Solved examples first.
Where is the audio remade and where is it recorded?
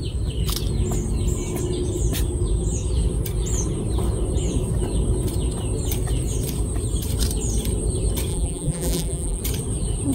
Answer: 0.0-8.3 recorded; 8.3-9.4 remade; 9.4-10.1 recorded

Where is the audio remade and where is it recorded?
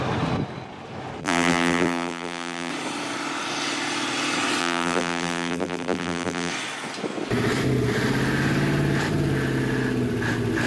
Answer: 0.0-1.2 recorded; 1.2-2.7 remade; 2.7-4.6 recorded; 4.6-6.5 remade; 6.5-10.7 recorded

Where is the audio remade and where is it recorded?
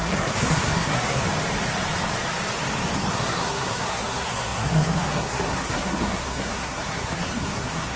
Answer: 0.0-1.2 remade; 1.2-3.1 recorded; 3.1-8.0 remade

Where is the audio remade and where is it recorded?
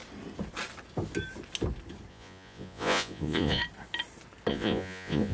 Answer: 0.0-2.1 recorded; 2.1-3.6 remade; 3.6-4.5 recorded; 4.5-5.3 remade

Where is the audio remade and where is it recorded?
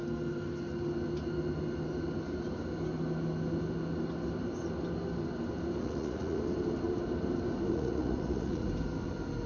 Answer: 0.0-5.8 recorded; 5.8-6.4 remade; 6.4-7.7 recorded; 7.7-8.7 remade; 8.7-9.5 recorded